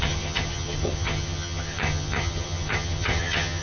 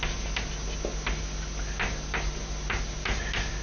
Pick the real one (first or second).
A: second